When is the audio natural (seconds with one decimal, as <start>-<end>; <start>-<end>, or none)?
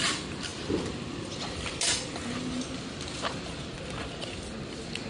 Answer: 0.0-5.1